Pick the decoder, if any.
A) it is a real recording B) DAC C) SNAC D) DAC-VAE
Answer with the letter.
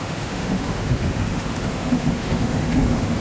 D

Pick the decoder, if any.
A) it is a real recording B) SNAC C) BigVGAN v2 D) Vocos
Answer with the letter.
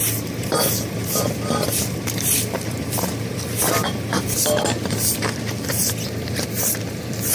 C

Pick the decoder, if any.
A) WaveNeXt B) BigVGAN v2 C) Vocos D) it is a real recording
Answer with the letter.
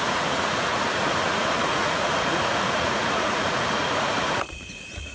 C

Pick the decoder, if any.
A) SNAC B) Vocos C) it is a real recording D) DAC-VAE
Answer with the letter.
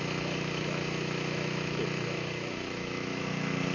D